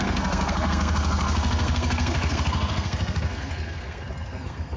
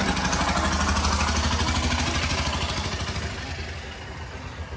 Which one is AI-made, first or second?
first